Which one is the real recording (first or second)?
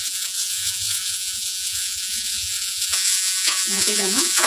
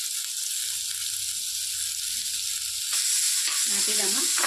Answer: second